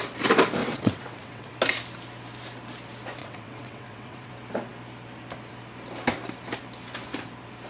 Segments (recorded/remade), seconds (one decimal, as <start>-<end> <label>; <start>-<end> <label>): 0.0-0.6 recorded; 0.6-1.5 remade; 1.5-3.2 recorded; 3.2-4.3 remade; 4.3-7.7 recorded